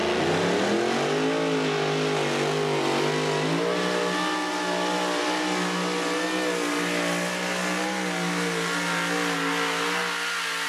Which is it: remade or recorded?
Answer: recorded